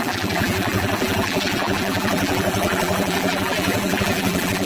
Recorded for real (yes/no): no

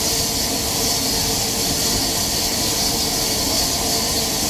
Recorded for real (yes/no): yes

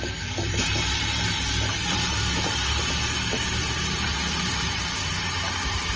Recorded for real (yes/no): no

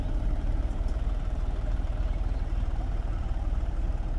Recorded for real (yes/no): no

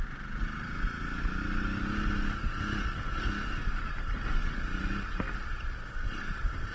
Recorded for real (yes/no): yes